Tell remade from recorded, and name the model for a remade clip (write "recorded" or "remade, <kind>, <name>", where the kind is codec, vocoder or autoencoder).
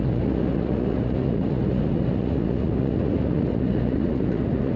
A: remade, vocoder, Vocos